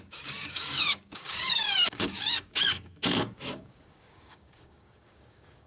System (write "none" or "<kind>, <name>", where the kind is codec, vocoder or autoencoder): codec, DAC